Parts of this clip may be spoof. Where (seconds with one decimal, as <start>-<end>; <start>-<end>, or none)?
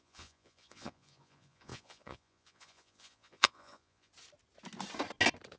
0.0-4.1